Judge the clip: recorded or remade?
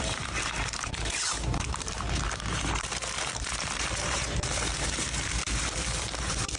remade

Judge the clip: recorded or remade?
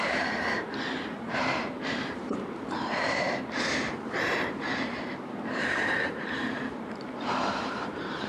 remade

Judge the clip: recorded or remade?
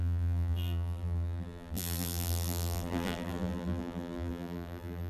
remade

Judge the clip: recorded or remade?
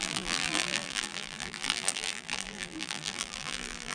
remade